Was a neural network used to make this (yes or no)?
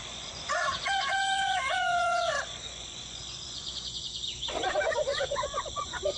yes